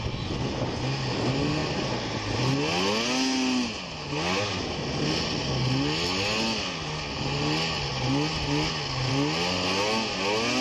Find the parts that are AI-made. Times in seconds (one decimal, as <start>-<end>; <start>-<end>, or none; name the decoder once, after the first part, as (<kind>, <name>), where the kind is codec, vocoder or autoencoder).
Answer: none